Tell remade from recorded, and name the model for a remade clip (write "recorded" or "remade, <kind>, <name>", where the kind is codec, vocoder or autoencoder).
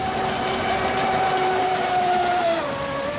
remade, vocoder, BigVGAN v2